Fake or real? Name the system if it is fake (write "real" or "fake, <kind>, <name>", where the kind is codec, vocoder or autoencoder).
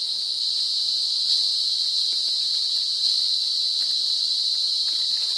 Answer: real